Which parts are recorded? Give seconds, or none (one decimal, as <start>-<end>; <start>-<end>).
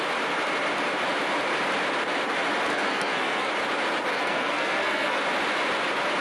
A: 0.0-2.7; 3.5-4.1; 5.2-6.2